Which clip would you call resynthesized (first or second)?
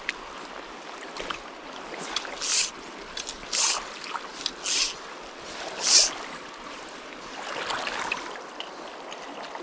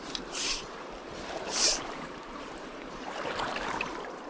second